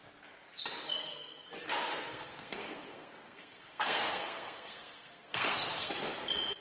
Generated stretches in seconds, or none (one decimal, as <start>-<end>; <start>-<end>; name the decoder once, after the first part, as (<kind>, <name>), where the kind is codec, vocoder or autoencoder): 1.0-1.5 (codec, SNAC); 1.9-5.9